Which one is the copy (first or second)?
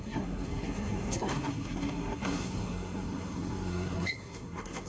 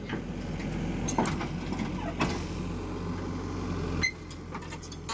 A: first